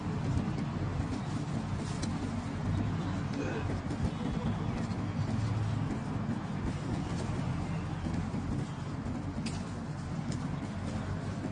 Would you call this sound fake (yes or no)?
no